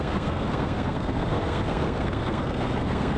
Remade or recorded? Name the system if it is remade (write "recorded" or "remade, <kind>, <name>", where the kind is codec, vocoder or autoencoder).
remade, codec, SNAC